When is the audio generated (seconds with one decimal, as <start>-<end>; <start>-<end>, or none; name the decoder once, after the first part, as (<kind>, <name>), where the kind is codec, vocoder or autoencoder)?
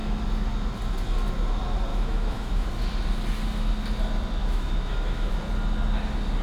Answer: 1.9-2.7 (autoencoder, DAC-VAE); 4.4-5.3